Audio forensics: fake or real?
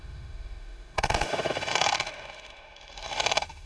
fake